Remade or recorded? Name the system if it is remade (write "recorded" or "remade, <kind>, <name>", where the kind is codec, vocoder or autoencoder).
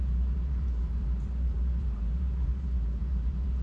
remade, vocoder, BigVGAN v2